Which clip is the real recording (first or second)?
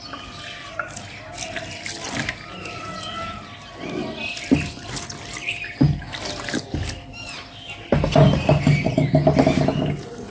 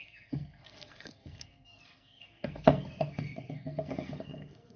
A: first